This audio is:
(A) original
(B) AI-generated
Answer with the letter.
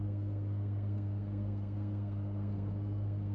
B